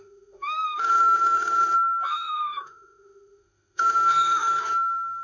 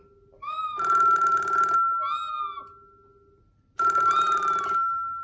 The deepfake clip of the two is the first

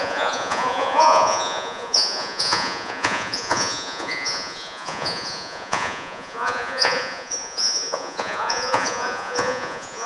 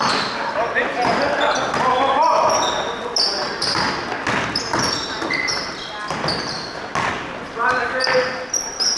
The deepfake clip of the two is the first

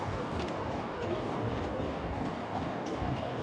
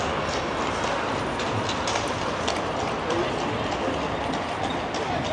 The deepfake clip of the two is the first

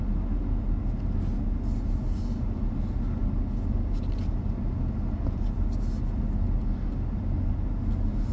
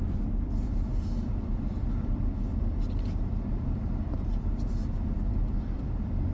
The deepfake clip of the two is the second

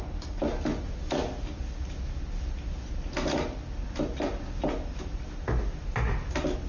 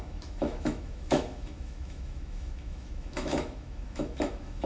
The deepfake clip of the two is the second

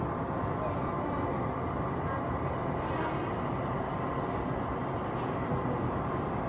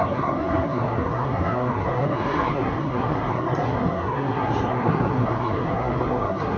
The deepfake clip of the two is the second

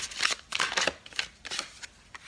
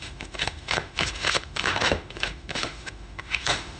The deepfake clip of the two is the second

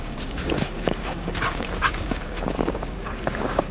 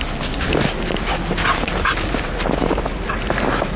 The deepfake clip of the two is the first